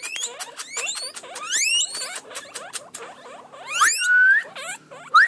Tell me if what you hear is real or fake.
real